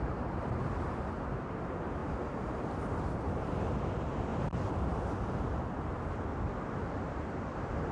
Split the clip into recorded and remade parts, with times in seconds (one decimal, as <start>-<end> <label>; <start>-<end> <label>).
0.0-2.0 remade; 2.0-3.0 recorded; 3.0-4.3 remade; 4.3-7.0 recorded; 7.0-7.9 remade